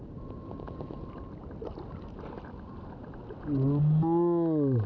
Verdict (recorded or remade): recorded